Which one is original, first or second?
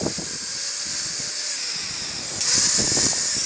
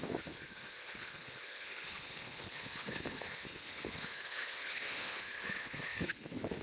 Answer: first